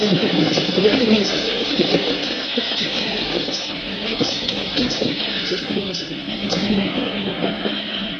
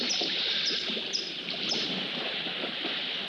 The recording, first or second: second